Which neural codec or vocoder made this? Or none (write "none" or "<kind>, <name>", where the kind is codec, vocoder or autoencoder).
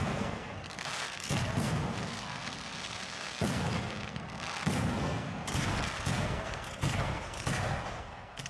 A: codec, SNAC